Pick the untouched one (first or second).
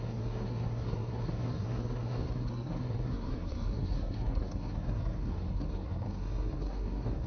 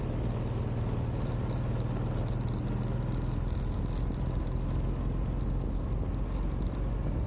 second